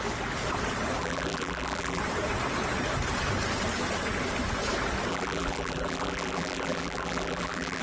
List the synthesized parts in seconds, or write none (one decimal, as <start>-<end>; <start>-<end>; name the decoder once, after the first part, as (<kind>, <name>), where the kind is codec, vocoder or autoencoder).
1.0-2.0 (vocoder, BigVGAN v2); 5.1-7.8